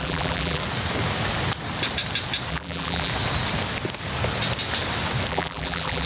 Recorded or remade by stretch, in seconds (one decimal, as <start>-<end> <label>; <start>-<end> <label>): 0.0-0.6 remade; 0.6-2.5 recorded; 2.5-3.1 remade; 3.1-5.3 recorded; 5.3-6.1 remade